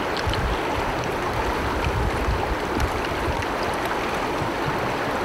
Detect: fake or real real